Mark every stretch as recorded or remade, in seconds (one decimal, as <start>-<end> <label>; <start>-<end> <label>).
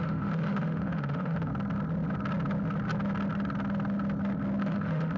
0.0-1.5 remade; 1.5-4.6 recorded; 4.6-5.2 remade